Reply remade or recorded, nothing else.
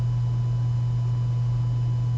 recorded